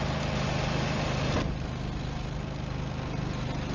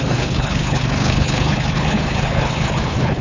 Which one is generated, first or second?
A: second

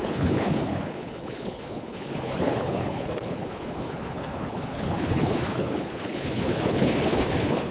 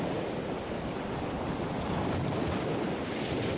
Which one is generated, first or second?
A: first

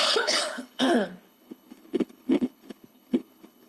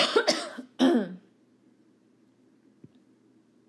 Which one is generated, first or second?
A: first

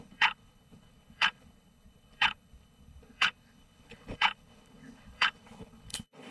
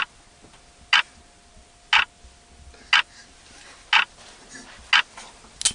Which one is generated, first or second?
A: first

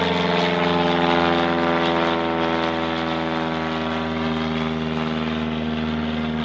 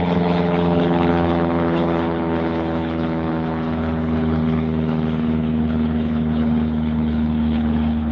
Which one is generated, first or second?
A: second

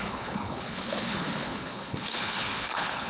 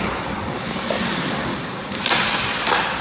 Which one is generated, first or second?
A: first